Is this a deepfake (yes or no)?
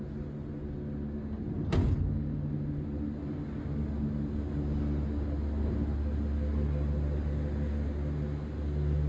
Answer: no